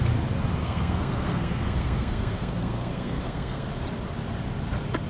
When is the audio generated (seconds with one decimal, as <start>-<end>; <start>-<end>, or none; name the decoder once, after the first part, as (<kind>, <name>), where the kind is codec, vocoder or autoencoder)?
0.6-3.7 (codec, SNAC)